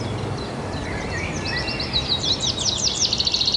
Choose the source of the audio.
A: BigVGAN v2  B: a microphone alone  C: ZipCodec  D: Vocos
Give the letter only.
B